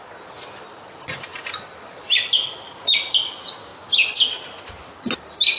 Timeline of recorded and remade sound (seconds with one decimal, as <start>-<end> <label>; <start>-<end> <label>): 0.0-5.6 recorded